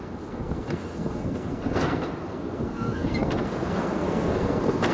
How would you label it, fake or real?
fake